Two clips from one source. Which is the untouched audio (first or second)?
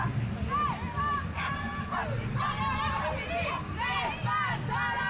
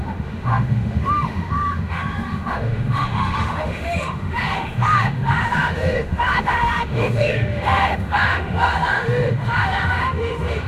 first